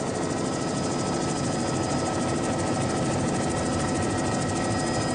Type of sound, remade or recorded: recorded